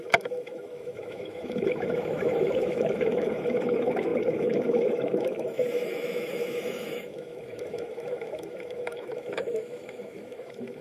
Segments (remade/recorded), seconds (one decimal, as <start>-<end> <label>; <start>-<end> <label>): 0.0-10.8 remade